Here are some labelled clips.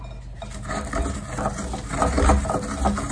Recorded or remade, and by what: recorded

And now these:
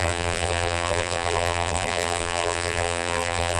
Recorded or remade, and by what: remade, vocoder, BigVGAN v2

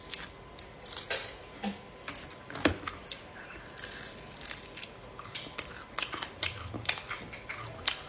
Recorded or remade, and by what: recorded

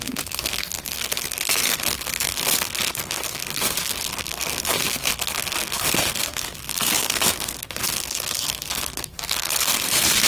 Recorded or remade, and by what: remade, codec, SNAC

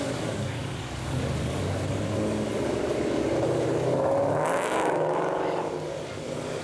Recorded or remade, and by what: remade, codec, DAC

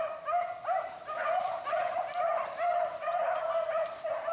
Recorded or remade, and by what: recorded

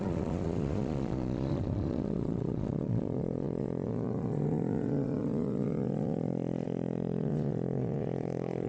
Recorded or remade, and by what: remade, vocoder, Vocos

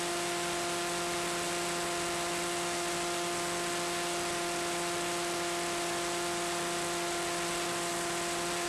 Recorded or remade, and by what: recorded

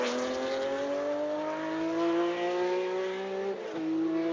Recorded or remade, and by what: recorded